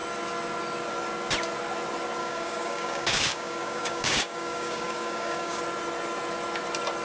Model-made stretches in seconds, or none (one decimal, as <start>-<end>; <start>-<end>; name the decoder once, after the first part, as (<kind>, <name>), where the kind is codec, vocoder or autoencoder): 2.2-5.6 (codec, DAC)

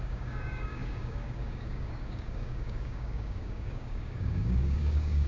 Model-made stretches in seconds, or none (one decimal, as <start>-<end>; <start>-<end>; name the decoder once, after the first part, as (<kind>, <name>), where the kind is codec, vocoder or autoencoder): 0.0-5.3 (codec, DAC)

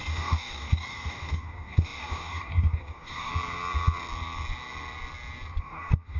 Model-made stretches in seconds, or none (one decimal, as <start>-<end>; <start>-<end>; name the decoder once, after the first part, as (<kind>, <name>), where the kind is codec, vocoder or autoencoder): 0.0-3.3 (codec, DAC); 5.6-6.2

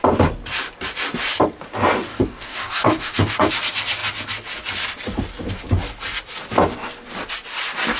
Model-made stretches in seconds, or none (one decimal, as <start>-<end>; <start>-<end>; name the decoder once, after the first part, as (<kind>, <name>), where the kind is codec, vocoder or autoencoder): 2.1-3.5 (codec, DAC)

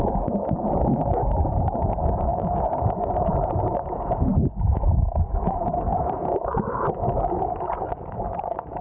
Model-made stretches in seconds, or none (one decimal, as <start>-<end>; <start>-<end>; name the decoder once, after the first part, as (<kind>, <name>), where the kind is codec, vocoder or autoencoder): 0.0-8.8 (codec, DAC)